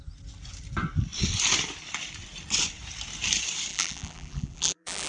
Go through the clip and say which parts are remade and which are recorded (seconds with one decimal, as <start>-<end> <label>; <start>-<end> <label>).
0.0-3.7 recorded; 3.7-5.1 remade

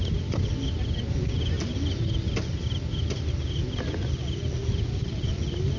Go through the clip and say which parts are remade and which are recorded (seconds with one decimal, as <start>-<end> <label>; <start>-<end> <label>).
0.0-5.8 recorded

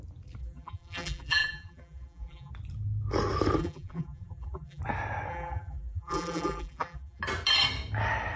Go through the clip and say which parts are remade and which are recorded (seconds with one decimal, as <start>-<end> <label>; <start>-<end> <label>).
0.0-0.4 recorded; 0.4-2.5 remade; 2.5-3.6 recorded; 3.6-4.8 remade; 4.8-5.3 recorded; 5.3-7.2 remade; 7.2-8.4 recorded

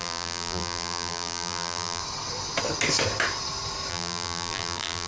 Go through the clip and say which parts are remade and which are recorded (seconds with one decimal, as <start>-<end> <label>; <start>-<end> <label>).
0.0-2.0 remade; 2.0-3.9 recorded; 3.9-5.1 remade

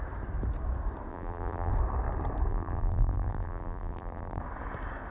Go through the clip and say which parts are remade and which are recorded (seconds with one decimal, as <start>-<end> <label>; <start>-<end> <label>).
0.0-1.1 recorded; 1.1-1.7 remade; 1.7-2.5 recorded; 2.5-4.4 remade; 4.4-5.1 recorded